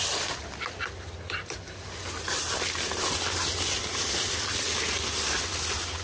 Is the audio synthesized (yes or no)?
no